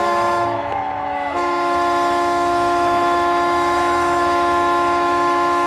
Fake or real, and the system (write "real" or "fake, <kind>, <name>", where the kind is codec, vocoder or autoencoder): fake, autoencoder, DAC-VAE